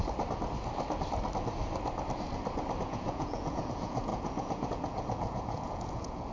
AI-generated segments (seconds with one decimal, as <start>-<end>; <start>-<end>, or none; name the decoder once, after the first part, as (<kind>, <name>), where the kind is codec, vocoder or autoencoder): 2.8-6.3 (vocoder, Vocos)